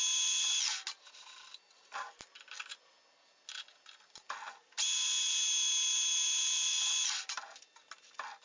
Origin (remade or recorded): recorded